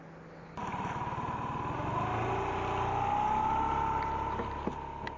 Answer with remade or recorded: recorded